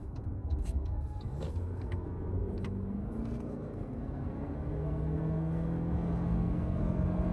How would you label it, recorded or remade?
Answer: remade